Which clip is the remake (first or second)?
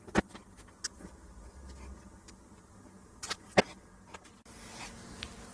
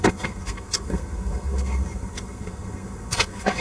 second